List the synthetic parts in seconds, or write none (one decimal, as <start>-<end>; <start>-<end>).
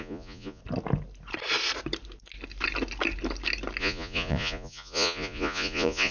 0.0-0.6; 3.8-6.1